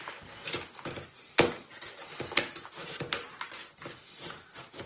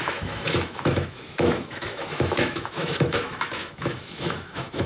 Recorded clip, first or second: first